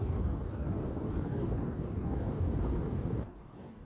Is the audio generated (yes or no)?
yes